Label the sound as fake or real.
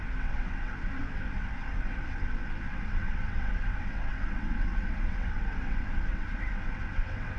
fake